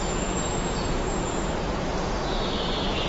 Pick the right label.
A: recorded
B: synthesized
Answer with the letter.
B